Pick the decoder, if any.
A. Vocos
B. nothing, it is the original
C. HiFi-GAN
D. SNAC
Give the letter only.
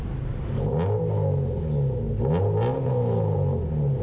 B